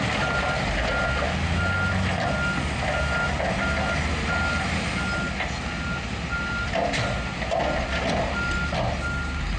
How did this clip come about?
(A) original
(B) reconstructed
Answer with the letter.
A